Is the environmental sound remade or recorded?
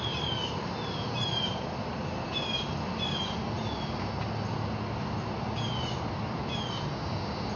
recorded